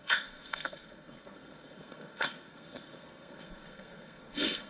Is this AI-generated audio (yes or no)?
yes